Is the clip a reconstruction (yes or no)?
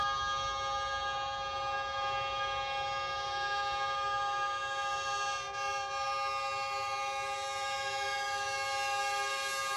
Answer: no